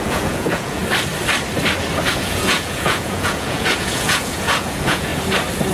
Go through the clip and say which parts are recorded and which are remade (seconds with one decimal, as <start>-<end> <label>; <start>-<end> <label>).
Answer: 0.0-0.8 remade; 0.8-2.1 recorded; 2.1-5.1 remade; 5.1-5.7 recorded